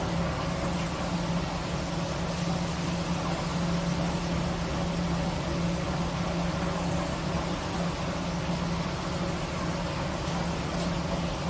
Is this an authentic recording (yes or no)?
yes